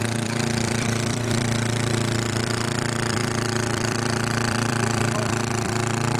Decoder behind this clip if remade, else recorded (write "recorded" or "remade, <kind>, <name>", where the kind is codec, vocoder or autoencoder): remade, vocoder, BigVGAN v2